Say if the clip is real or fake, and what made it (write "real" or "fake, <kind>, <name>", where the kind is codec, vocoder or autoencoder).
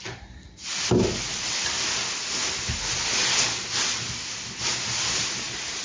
real